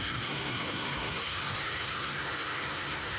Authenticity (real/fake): fake